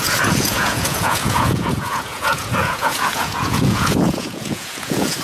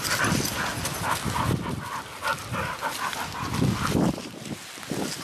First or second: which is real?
second